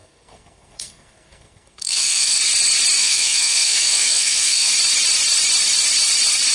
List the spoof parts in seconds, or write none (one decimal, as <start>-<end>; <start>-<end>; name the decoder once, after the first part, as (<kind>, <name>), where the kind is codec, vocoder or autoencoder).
0.0-2.4 (codec, SNAC); 3.0-4.7